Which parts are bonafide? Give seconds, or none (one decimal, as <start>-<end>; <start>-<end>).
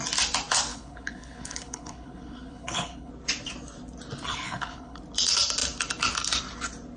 0.0-0.7; 3.1-4.3; 5.0-7.0